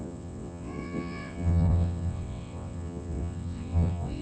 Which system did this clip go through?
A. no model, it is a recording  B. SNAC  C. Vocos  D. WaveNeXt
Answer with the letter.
D